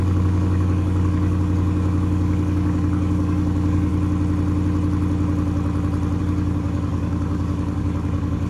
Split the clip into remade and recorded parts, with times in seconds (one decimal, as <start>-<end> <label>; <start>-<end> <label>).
0.0-3.9 remade; 3.9-6.2 recorded; 6.2-8.5 remade